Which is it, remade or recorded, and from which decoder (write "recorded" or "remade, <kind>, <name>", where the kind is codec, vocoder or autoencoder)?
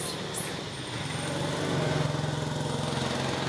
recorded